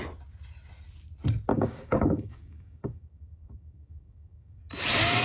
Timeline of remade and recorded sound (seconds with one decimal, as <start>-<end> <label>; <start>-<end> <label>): 0.0-1.5 recorded; 1.5-4.6 remade; 4.6-5.2 recorded